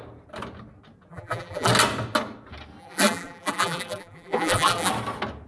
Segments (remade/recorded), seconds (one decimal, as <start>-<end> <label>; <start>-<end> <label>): 0.0-1.1 recorded; 1.1-1.7 remade; 1.7-2.8 recorded; 2.8-4.9 remade; 4.9-5.5 recorded